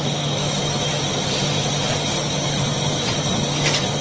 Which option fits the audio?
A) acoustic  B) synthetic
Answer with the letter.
A